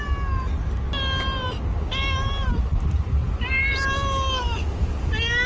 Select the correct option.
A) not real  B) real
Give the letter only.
B